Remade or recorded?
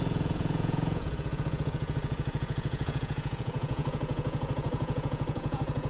remade